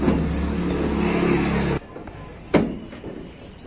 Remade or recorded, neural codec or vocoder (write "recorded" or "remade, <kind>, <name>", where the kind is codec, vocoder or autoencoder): recorded